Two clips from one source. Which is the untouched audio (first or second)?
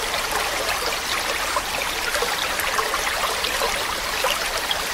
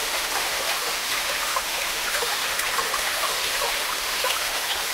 first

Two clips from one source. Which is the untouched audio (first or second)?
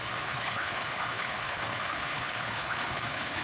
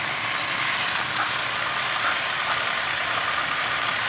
second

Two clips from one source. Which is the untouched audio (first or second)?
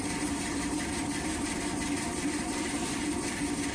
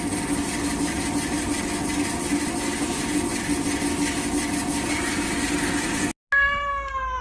second